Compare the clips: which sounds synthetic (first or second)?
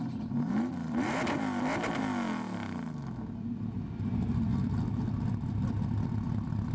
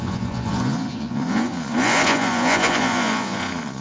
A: second